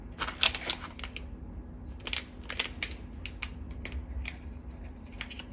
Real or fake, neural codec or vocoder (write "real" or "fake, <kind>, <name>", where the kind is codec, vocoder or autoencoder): real